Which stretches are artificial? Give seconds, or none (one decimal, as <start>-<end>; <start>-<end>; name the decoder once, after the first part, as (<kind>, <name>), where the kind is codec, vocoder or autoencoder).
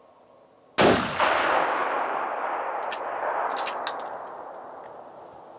none